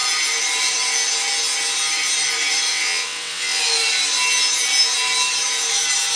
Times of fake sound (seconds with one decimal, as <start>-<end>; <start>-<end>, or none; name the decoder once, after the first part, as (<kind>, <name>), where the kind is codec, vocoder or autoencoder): 2.7-3.6 (vocoder, WaveNeXt)